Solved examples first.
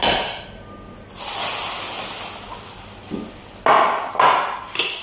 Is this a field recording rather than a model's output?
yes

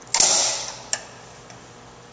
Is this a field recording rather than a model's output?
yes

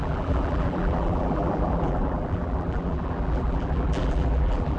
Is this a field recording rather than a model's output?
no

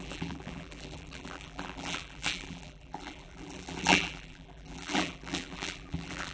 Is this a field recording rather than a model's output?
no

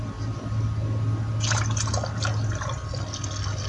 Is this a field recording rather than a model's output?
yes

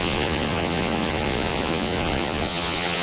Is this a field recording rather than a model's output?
no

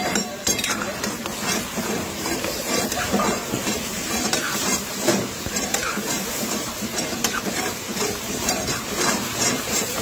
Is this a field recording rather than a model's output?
no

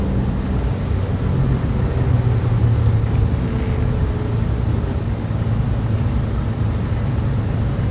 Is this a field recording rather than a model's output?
yes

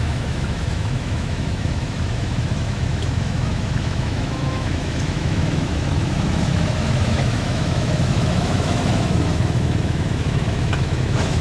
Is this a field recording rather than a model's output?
no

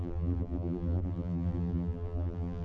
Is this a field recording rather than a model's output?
no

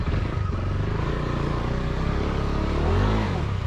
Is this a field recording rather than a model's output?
no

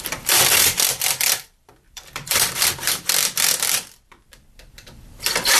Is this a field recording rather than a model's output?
no